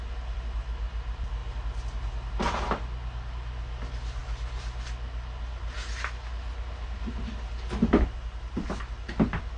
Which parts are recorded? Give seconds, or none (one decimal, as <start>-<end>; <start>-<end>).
0.0-9.6